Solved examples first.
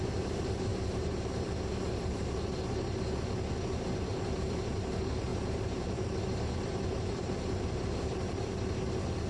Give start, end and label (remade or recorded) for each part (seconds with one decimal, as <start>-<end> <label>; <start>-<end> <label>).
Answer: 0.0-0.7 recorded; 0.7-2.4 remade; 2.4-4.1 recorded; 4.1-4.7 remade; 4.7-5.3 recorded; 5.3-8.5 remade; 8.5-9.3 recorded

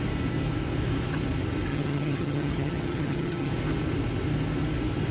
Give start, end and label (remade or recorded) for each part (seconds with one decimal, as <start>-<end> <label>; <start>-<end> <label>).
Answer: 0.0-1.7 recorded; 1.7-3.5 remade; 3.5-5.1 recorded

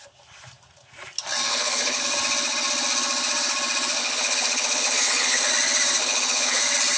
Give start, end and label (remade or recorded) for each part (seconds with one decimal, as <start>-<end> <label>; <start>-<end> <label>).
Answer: 0.0-1.5 recorded; 1.5-2.0 remade; 2.0-4.0 recorded; 4.0-5.5 remade; 5.5-6.0 recorded; 6.0-6.6 remade; 6.6-7.0 recorded

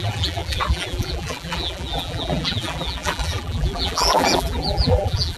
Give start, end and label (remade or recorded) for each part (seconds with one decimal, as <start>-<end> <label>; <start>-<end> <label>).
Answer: 0.0-5.4 remade

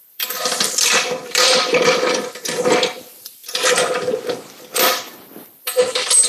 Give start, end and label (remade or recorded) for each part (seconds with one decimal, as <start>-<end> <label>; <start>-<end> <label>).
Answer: 0.0-6.3 remade

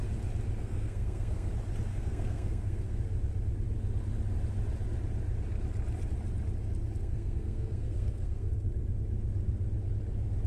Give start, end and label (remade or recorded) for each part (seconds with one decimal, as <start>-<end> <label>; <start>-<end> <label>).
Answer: 0.0-0.6 recorded; 0.6-1.5 remade; 1.5-1.9 recorded; 1.9-3.0 remade; 3.0-7.0 recorded; 7.0-8.5 remade; 8.5-10.5 recorded

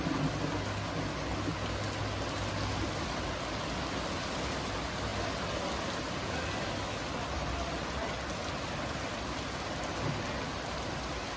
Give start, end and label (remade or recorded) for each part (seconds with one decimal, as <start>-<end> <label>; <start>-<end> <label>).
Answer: 0.0-11.4 recorded

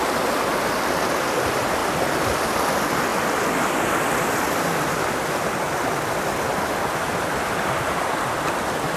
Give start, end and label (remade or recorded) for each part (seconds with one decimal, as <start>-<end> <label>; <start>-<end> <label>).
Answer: 0.0-9.0 recorded